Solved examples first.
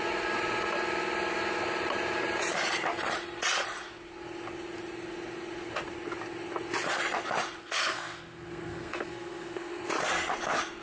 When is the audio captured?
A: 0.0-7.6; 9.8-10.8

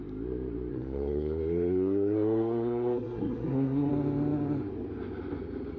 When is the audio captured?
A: 0.0-0.7; 3.9-5.8

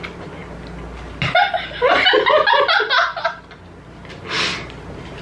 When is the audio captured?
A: 0.0-5.2

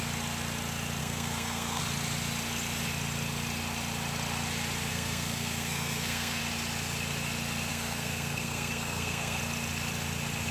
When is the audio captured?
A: 0.0-1.0; 1.8-4.9; 6.4-7.7; 9.4-10.5

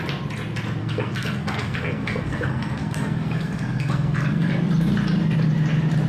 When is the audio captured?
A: 0.0-0.8; 4.5-6.1

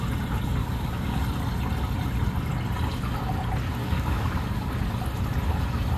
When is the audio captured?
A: 0.0-0.6; 1.2-3.8; 4.7-6.0